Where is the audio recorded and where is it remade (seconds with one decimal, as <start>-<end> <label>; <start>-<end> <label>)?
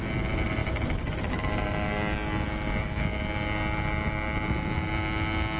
0.0-5.6 recorded